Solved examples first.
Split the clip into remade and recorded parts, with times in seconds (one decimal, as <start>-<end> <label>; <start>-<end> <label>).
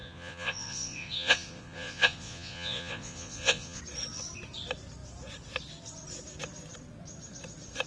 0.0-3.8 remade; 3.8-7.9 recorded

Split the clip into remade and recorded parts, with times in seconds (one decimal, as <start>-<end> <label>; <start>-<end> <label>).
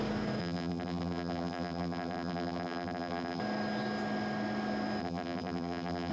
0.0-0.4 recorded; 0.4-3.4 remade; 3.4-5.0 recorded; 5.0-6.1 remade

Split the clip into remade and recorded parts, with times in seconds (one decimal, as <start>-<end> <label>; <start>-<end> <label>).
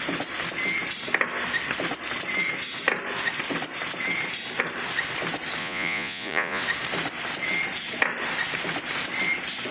0.0-5.6 recorded; 5.6-6.6 remade; 6.6-9.7 recorded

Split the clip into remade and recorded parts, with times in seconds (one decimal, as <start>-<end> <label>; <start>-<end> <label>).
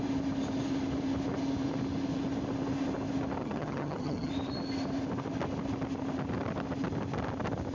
0.0-3.4 recorded; 3.4-4.3 remade; 4.3-7.7 recorded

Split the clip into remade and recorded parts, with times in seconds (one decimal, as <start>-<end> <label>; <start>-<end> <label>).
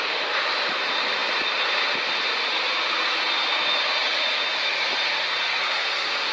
0.0-5.6 recorded; 5.6-6.3 remade